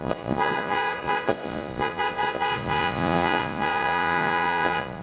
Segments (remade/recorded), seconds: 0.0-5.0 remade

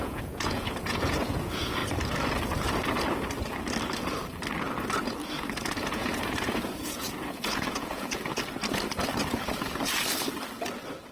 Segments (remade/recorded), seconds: 0.0-1.8 remade; 1.8-5.4 recorded; 5.4-8.3 remade; 8.3-11.1 recorded

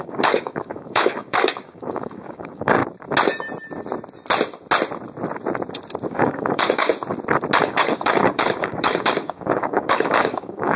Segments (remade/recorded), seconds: 0.0-2.8 remade; 2.8-6.1 recorded; 6.1-6.9 remade; 6.9-7.6 recorded; 7.6-10.8 remade

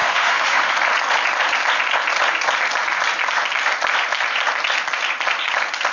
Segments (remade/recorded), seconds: 0.0-0.7 remade; 0.7-5.9 recorded

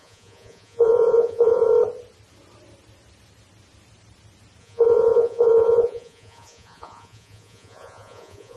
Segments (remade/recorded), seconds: 0.0-1.7 remade; 1.7-4.6 recorded; 4.6-8.6 remade

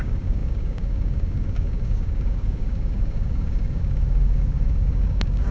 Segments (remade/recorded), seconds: 0.0-5.5 remade